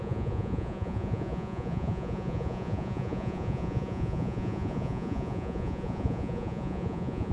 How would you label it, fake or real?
fake